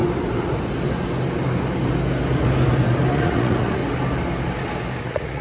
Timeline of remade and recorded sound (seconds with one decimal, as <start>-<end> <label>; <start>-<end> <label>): 0.0-3.1 recorded; 3.1-3.8 remade; 3.8-5.0 recorded; 5.0-5.4 remade